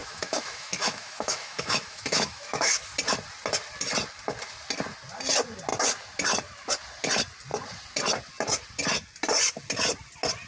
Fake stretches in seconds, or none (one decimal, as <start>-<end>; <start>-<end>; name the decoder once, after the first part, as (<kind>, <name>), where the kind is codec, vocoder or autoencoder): 0.0-2.8 (autoencoder, DAC-VAE)

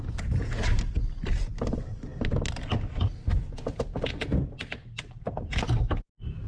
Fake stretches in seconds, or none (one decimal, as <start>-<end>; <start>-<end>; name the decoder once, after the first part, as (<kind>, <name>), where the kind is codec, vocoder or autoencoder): none

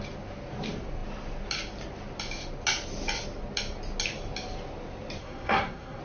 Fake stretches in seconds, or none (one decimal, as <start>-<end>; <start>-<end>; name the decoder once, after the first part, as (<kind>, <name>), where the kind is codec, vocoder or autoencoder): 5.2-6.0 (codec, SNAC)

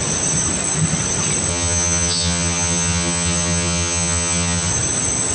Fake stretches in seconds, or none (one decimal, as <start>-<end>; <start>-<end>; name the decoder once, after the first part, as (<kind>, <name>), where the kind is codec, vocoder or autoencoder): 1.5-4.7 (vocoder, HiFi-GAN)

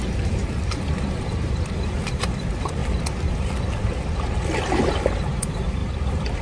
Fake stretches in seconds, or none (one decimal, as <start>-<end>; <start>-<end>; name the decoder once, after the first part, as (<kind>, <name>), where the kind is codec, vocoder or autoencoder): 0.0-2.8 (vocoder, BigVGAN v2); 5.3-5.8

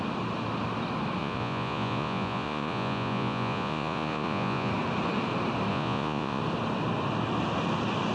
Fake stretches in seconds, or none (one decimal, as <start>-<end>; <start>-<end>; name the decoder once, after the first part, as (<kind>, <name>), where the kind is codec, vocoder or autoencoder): 1.2-4.7 (vocoder, Vocos); 5.7-6.4

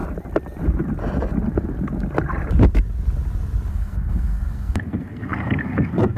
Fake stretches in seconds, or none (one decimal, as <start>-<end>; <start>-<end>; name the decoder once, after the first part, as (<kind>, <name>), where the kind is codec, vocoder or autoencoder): 3.7-6.2 (codec, SNAC)